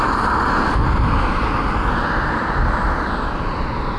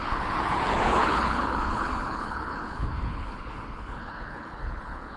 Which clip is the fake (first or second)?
second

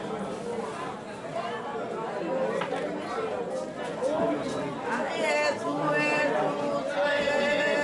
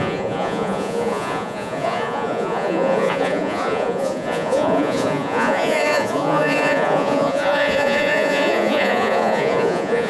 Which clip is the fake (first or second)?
second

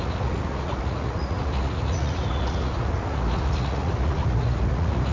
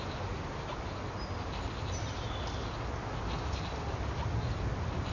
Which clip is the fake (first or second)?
first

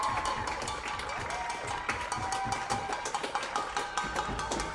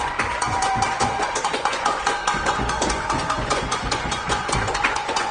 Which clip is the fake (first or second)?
second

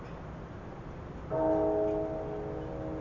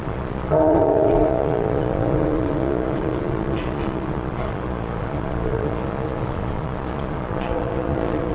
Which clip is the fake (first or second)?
second